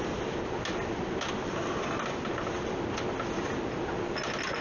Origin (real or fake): real